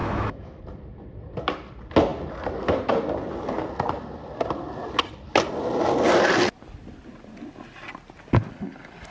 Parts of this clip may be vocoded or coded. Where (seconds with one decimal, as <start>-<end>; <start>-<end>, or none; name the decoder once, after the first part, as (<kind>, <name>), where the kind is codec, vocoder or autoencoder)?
0.0-0.6 (autoencoder, DAC-VAE)